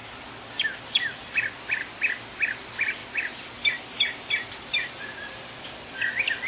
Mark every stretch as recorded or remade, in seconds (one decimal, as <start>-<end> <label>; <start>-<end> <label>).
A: 0.0-6.5 recorded